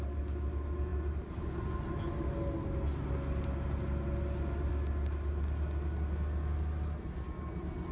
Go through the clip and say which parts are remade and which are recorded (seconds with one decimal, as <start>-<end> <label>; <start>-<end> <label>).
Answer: 0.0-7.9 recorded